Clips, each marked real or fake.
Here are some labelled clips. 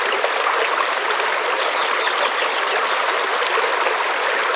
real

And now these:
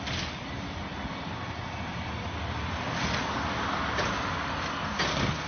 real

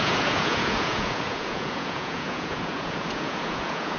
fake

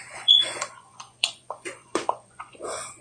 fake